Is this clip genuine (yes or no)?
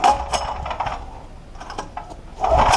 yes